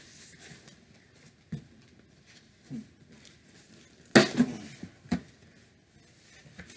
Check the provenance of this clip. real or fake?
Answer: real